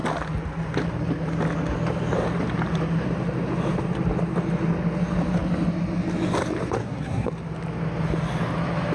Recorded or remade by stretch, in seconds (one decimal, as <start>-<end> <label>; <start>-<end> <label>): 0.0-6.8 recorded; 6.8-7.3 remade; 7.3-8.9 recorded